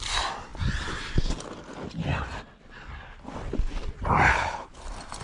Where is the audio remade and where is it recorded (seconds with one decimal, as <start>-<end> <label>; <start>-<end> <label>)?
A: 0.0-4.3 recorded; 4.3-4.8 remade; 4.8-5.2 recorded